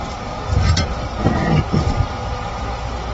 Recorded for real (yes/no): yes